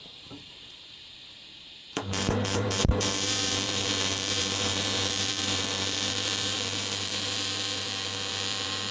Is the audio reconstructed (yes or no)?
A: yes